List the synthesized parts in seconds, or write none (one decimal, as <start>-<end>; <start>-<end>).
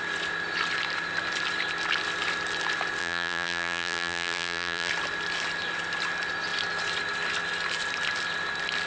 3.0-4.9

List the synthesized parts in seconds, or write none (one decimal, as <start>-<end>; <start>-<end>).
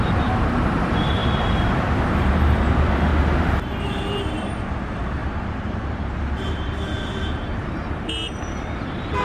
0.0-3.1; 3.8-9.2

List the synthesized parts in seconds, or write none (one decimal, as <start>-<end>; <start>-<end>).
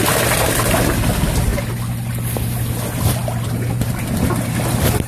0.0-1.5; 2.1-5.1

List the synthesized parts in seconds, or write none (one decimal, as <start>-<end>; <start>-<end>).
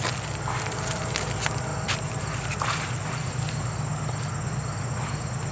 1.7-3.4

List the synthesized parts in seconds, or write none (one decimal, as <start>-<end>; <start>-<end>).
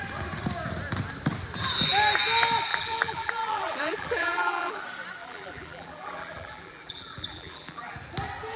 2.7-4.8; 5.2-7.9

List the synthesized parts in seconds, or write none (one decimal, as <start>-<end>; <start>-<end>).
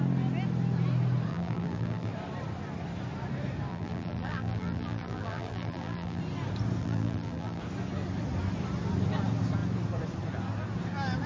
1.3-2.1; 3.7-6.2; 6.8-7.6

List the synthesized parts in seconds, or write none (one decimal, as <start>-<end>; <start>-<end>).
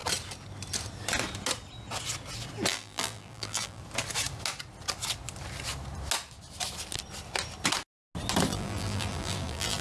2.7-3.8; 8.5-9.8